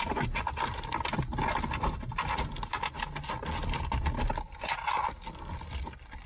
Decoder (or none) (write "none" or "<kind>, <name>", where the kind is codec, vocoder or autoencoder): none